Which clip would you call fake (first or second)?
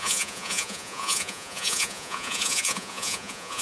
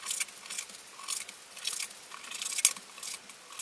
first